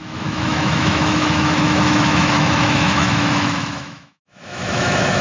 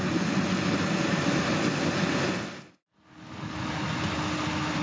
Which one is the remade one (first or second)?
first